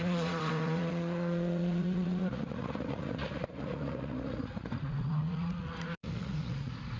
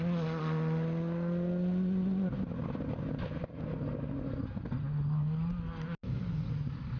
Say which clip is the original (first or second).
second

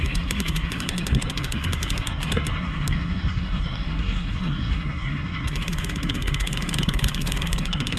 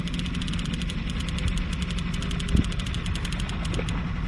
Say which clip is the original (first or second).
second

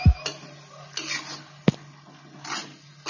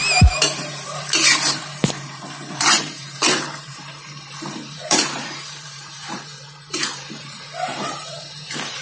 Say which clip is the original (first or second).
first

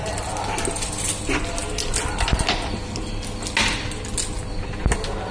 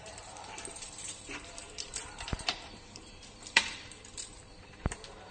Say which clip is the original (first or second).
first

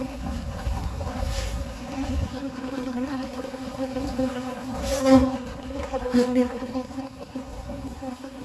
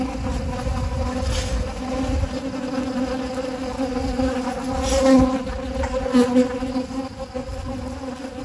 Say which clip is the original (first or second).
second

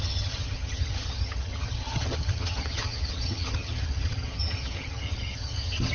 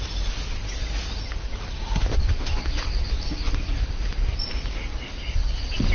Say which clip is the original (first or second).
second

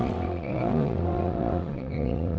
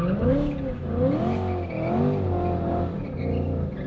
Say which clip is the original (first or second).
second